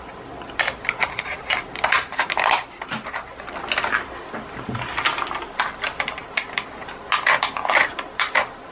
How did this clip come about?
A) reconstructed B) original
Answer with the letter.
B